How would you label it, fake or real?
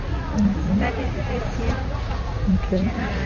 fake